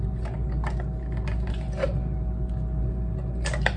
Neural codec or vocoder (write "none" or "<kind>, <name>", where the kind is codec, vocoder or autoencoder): none